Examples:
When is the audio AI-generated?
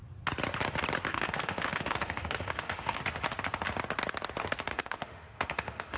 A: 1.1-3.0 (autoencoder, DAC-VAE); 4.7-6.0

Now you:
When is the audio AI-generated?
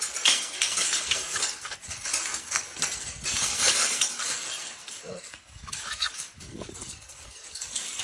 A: 0.0-8.0 (codec, SNAC)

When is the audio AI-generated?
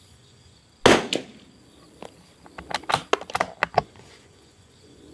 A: 0.0-0.6 (vocoder, Vocos); 3.7-5.1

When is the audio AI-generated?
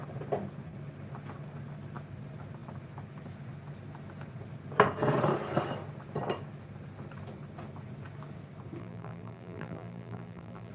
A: 8.8-10.7 (vocoder, BigVGAN v2)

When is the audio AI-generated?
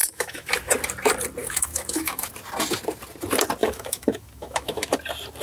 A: 0.0-0.5 (autoencoder, DAC-VAE); 1.4-2.3; 3.6-4.9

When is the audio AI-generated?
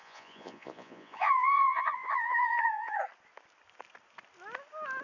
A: 0.0-3.0 (vocoder, Vocos)